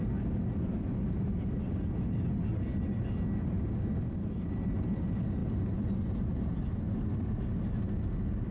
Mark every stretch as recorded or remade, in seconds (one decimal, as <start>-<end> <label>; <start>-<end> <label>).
0.0-8.5 recorded